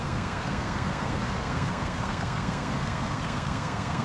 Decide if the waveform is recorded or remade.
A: remade